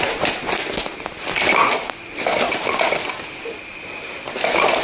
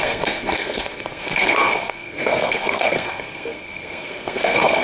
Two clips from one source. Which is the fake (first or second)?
second